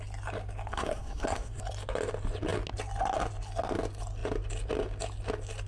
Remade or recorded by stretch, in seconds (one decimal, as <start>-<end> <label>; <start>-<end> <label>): 0.0-0.7 recorded; 0.7-1.6 remade; 1.6-5.7 recorded